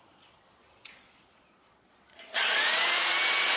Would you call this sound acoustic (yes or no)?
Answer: no